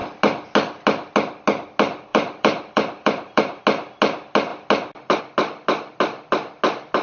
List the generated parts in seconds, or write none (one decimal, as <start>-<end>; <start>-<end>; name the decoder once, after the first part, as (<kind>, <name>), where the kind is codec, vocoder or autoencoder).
2.1-3.6 (vocoder, BigVGAN v2)